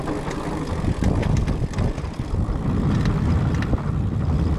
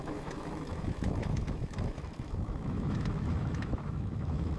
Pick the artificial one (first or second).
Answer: second